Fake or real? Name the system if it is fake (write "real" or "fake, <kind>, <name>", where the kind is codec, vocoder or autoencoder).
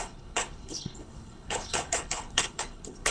fake, codec, HILCodec